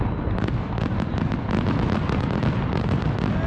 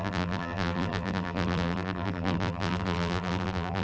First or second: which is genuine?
first